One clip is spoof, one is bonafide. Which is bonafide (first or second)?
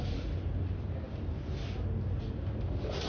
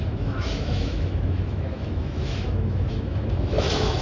first